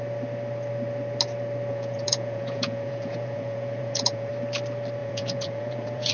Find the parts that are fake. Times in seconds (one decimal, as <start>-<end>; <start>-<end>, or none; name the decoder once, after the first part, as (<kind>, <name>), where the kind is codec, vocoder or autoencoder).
1.7-4.3 (vocoder, Vocos); 5.0-6.1